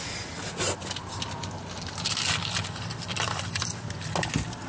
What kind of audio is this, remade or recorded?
recorded